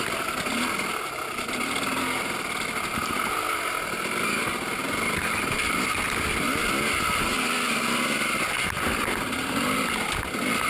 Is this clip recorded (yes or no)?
yes